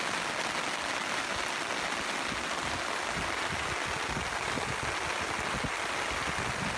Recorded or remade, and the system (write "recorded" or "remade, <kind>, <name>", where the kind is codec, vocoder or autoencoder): recorded